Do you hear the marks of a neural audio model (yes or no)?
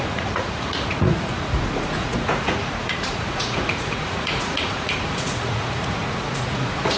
yes